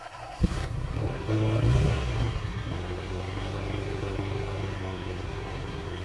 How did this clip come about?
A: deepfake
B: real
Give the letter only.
A